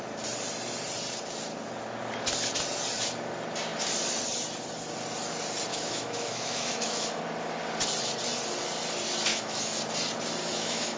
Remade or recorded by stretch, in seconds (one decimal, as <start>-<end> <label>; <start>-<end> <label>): 0.0-5.7 recorded; 5.7-7.2 remade; 7.2-9.3 recorded; 9.3-9.8 remade; 9.8-10.4 recorded; 10.4-11.0 remade